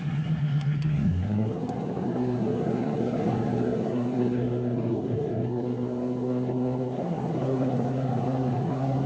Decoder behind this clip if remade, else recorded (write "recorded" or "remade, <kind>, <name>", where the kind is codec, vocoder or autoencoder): remade, codec, SNAC